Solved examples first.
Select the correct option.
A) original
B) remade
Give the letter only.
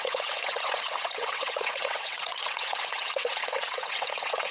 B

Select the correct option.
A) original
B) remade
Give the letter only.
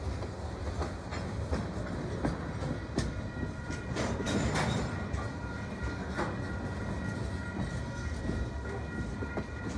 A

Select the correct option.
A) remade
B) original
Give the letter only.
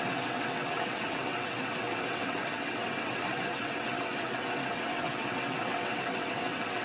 A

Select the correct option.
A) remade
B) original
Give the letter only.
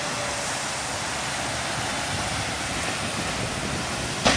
B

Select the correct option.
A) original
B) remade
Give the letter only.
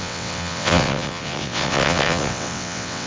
B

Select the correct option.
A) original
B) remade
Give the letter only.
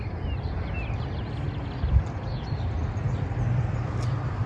A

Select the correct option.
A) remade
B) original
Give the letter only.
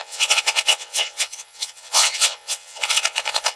A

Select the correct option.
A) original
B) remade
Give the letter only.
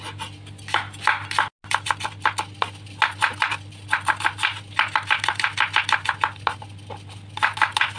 A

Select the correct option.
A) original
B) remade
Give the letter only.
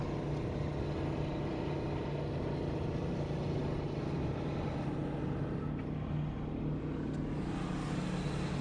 A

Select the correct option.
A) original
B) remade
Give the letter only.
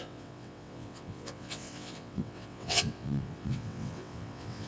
B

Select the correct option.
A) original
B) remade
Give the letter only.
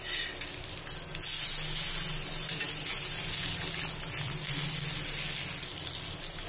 A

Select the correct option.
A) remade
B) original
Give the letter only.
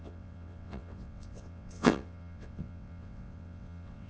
A